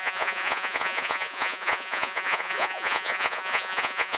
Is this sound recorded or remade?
remade